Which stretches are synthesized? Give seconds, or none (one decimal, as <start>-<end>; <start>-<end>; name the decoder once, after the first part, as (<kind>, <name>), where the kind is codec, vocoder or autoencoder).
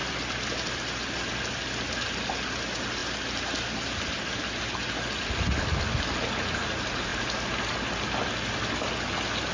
0.0-1.4 (vocoder, BigVGAN v2)